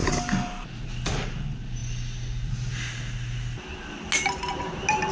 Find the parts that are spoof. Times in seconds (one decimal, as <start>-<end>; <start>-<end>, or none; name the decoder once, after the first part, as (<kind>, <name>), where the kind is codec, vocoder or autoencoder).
none